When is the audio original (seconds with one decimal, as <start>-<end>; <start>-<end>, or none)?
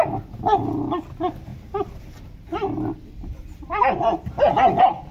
0.0-5.1